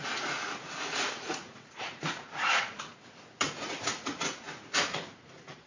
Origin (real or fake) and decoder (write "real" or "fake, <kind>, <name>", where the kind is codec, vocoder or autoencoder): fake, vocoder, Vocos